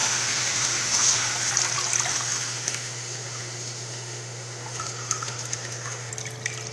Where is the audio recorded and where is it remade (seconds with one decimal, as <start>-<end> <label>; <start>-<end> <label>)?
0.0-1.5 remade; 1.5-2.1 recorded; 2.1-6.1 remade; 6.1-6.7 recorded